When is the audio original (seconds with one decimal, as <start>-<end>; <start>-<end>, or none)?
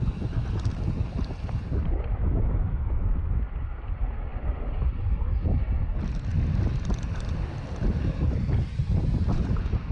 0.0-2.1; 3.4-9.9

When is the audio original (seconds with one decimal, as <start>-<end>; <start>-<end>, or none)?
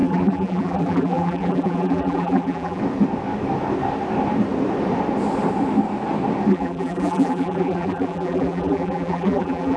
2.8-6.5